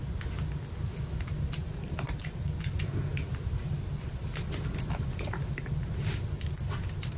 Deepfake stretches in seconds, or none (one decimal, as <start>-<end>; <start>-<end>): 1.6-2.4